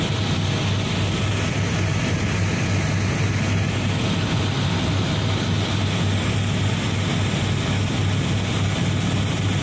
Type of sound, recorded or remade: recorded